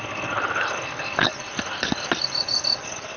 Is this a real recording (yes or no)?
yes